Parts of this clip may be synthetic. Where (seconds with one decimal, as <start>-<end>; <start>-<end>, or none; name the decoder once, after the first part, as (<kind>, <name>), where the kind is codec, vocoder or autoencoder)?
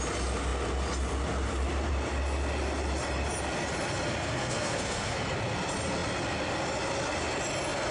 4.2-5.2 (codec, SNAC)